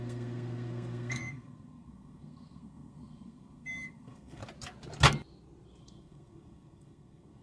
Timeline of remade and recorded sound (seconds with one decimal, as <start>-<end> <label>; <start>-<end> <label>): 0.0-4.4 remade; 4.4-5.8 recorded; 5.8-7.4 remade